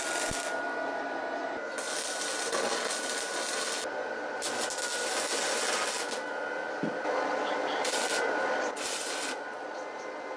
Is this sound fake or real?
real